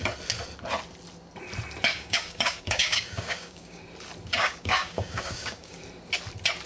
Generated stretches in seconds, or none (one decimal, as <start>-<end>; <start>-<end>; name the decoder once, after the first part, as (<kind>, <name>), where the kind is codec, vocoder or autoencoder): 1.9-3.8 (codec, DAC); 4.4-5.8